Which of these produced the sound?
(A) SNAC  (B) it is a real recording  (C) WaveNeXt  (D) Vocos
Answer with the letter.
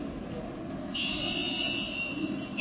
B